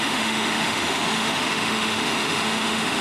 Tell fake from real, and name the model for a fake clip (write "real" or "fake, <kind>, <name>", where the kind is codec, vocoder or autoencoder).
fake, autoencoder, DAC-VAE